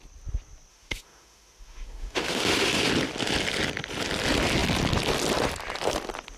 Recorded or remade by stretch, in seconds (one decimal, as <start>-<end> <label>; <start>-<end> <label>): 0.0-0.7 recorded; 0.7-2.9 remade; 2.9-6.4 recorded